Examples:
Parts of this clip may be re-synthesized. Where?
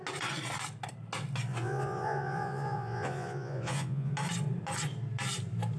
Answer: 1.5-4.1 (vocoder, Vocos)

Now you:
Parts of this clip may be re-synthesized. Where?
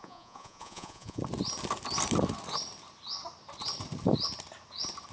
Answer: 0.0-1.2 (vocoder, Vocos)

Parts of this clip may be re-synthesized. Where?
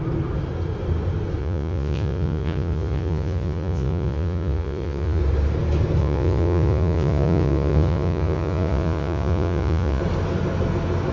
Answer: 1.4-5.2 (vocoder, Vocos); 6.0-10.0